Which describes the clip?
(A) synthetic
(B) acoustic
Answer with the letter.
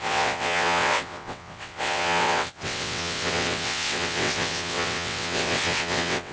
A